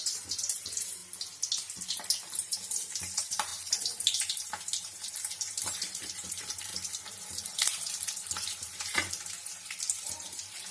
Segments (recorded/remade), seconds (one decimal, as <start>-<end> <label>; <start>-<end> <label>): 0.0-1.0 remade; 1.0-2.2 recorded; 2.2-10.7 remade